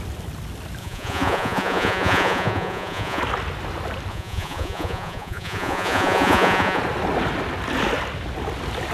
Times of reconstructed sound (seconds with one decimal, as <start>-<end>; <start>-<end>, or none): 0.8-3.2; 4.1-6.8